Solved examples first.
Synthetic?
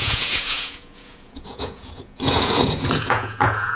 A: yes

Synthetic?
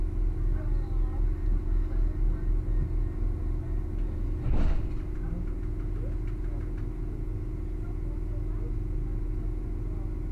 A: no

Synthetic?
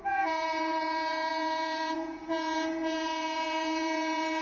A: yes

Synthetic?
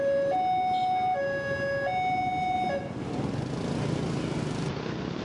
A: no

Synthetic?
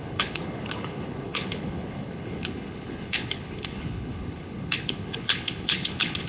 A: yes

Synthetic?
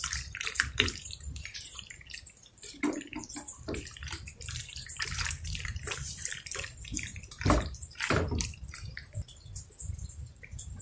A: yes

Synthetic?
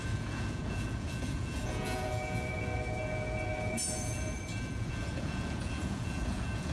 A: yes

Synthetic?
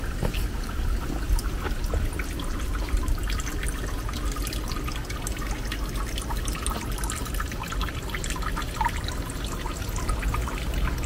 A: no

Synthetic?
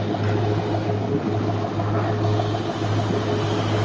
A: no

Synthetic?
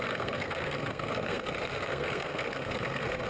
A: yes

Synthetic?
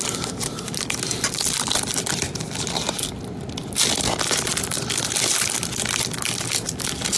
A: no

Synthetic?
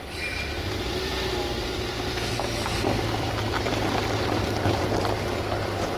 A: yes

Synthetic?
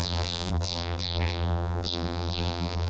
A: yes